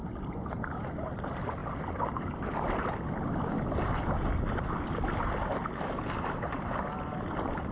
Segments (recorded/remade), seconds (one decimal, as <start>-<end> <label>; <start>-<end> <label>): 0.0-7.7 recorded